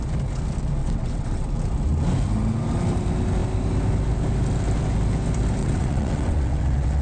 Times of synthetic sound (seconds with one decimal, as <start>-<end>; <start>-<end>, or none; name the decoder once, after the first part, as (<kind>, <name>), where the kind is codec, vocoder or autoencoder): 0.8-1.5 (vocoder, WaveNeXt); 5.6-7.0